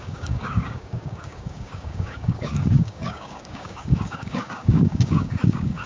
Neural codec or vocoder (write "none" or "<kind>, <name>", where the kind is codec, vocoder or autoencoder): codec, DAC